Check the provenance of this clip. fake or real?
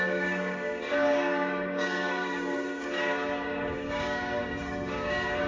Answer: fake